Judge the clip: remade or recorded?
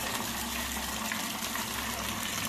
recorded